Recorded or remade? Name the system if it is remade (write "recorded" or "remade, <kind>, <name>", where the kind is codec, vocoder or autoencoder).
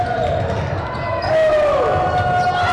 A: recorded